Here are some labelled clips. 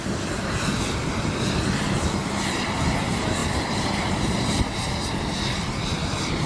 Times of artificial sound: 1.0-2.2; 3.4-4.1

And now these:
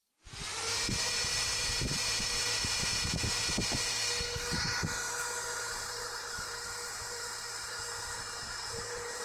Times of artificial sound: 0.0-9.2

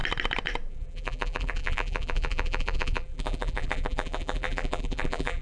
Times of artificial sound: 0.7-5.4

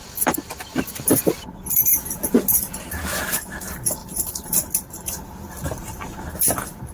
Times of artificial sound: 0.7-2.3; 4.0-6.2

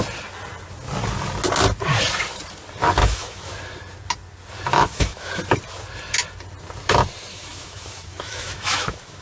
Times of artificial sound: 3.0-3.5; 4.7-5.4; 7.3-9.2

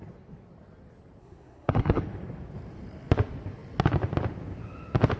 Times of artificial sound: 1.2-2.0

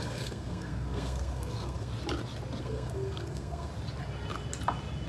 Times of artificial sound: 0.0-1.9; 2.6-3.7